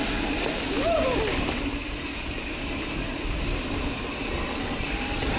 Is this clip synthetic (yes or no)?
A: no